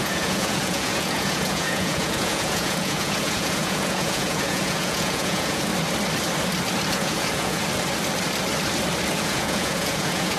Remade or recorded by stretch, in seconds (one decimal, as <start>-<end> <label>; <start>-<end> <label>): 0.0-5.7 remade; 5.7-6.9 recorded; 6.9-7.6 remade; 7.6-9.1 recorded; 9.1-10.4 remade